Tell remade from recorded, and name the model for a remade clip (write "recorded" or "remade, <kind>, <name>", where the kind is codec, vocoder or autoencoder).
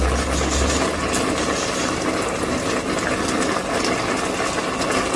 recorded